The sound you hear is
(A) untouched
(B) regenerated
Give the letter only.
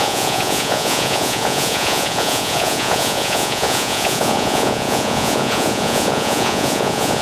B